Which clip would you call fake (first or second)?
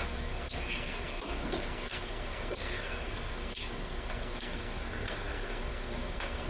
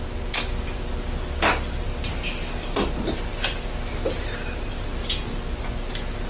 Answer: first